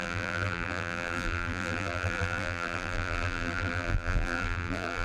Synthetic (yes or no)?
yes